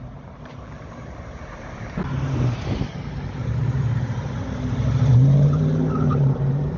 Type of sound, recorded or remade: remade